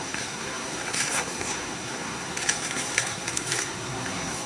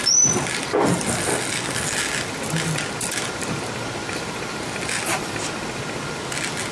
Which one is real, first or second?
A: second